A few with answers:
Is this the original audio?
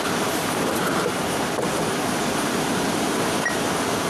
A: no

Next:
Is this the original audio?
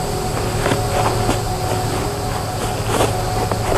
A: yes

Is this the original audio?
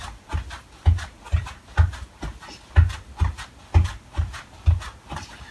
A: yes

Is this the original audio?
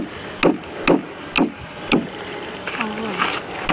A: yes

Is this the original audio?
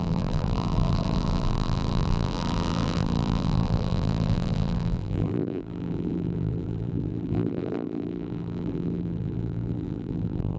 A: no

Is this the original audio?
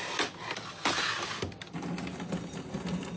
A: yes